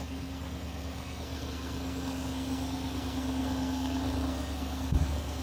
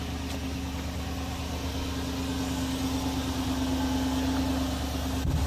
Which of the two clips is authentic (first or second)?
second